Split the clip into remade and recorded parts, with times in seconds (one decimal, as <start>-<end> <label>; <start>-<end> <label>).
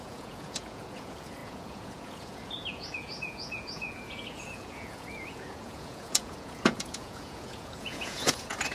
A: 0.0-8.7 remade